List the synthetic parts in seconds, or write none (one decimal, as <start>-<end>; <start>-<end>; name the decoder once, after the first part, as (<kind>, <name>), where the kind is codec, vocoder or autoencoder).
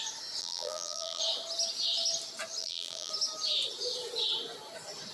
0.4-1.2 (vocoder, BigVGAN v2); 2.6-3.1